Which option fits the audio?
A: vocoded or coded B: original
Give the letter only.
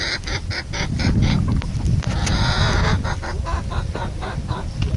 A